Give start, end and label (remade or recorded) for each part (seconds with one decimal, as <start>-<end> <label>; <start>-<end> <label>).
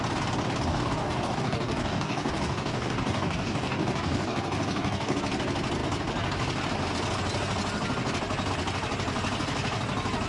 0.0-0.7 recorded; 0.7-5.2 remade; 5.2-10.3 recorded